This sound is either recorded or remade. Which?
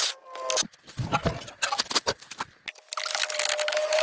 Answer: recorded